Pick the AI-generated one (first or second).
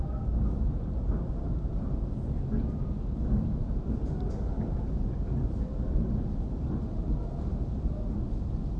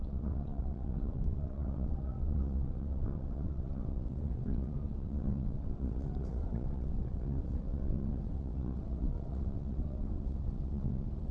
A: second